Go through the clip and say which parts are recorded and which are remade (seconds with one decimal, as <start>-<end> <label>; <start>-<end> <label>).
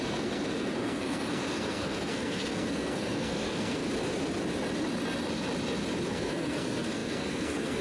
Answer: 0.0-3.8 remade; 3.8-6.1 recorded; 6.1-7.8 remade